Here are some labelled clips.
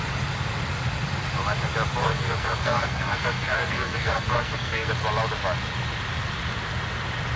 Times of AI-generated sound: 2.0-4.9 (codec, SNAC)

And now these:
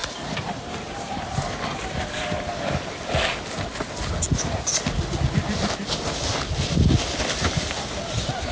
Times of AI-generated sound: 0.0-2.7 (vocoder, BigVGAN v2)

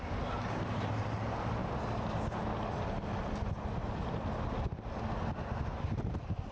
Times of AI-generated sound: none

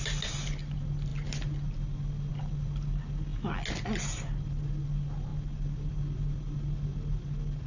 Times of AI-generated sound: none

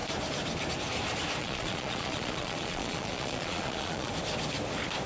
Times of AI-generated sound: 1.4-4.1 (vocoder, Vocos)